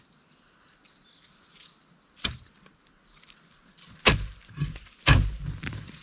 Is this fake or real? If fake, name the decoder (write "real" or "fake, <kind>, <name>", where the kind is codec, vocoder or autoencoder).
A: real